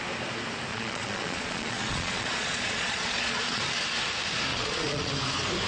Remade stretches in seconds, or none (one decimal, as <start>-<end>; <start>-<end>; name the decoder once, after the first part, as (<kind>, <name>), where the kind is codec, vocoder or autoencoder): 0.7-3.6 (vocoder, Vocos); 4.5-5.1